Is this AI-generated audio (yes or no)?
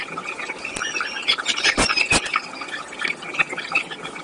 no